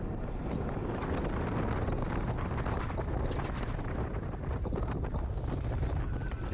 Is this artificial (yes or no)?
no